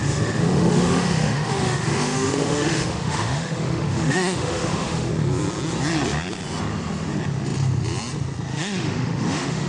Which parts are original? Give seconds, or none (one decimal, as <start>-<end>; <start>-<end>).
5.1-8.5